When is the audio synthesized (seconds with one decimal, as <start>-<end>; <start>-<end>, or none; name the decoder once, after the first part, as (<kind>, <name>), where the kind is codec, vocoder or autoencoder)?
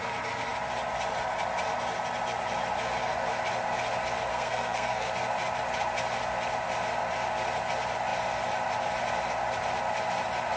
4.3-5.1 (codec, SNAC)